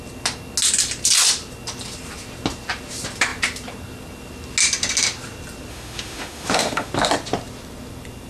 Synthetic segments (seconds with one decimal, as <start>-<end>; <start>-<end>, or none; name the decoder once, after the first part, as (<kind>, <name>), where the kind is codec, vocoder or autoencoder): 5.7-6.9 (autoencoder, DAC-VAE)